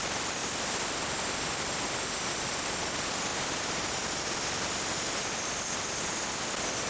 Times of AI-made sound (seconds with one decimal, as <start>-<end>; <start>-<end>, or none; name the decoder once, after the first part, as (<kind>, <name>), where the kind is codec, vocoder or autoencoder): none